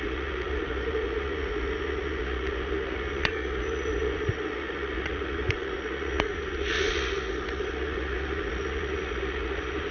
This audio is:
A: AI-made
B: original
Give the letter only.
A